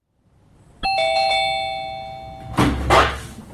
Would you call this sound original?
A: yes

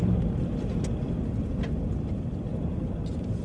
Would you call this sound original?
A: yes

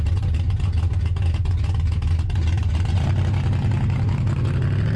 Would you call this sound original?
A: yes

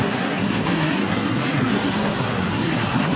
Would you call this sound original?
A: no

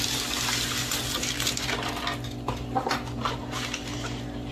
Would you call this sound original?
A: yes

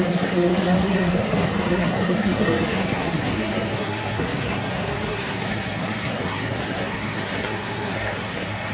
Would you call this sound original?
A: no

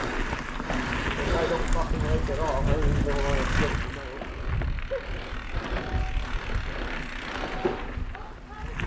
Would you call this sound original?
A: yes